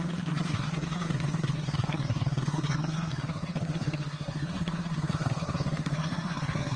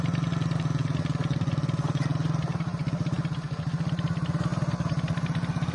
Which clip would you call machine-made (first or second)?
first